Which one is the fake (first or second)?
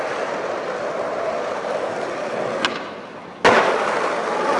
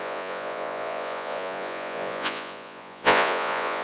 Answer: second